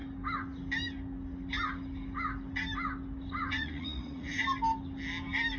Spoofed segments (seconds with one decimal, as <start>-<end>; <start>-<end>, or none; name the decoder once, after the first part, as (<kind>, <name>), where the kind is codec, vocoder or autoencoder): 3.5-4.4 (vocoder, Vocos)

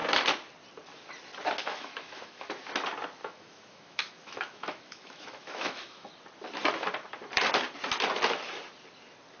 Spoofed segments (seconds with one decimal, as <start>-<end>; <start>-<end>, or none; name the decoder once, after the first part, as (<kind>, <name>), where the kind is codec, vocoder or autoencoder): 1.6-2.5 (autoencoder, DAC-VAE); 3.2-6.1

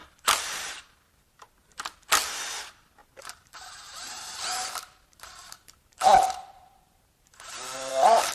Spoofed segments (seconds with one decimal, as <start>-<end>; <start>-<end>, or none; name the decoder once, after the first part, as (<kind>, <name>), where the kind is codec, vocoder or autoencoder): 0.0-1.5 (vocoder, BigVGAN v2); 3.0-7.9